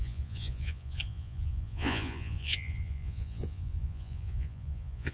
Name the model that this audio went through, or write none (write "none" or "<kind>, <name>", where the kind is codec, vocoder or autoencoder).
vocoder, Vocos